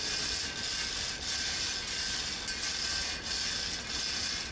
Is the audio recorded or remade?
recorded